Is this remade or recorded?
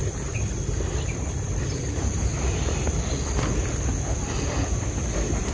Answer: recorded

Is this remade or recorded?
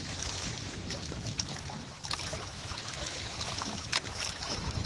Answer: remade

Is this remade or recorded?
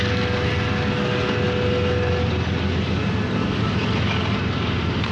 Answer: recorded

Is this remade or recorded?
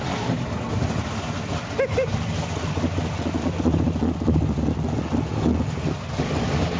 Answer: recorded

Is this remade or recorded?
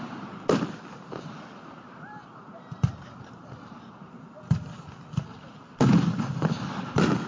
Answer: recorded